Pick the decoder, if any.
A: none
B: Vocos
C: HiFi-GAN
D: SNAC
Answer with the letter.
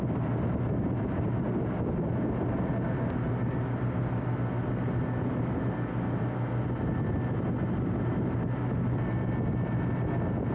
A